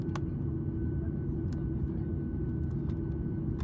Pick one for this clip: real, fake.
real